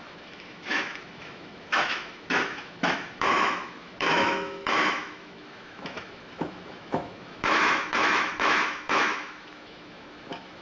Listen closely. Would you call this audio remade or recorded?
remade